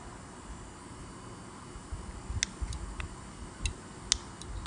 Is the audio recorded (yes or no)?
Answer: yes